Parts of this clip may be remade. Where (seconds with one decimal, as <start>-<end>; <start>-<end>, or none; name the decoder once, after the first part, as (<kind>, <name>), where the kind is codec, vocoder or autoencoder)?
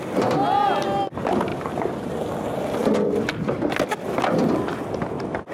1.5-2.1 (vocoder, BigVGAN v2)